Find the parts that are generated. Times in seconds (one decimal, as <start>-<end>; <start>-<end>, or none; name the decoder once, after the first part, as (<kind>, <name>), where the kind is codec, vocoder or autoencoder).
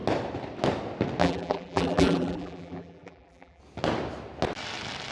1.2-3.6 (vocoder, BigVGAN v2)